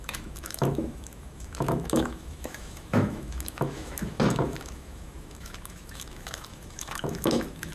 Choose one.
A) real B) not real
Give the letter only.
B